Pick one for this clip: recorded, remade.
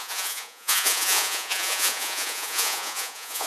remade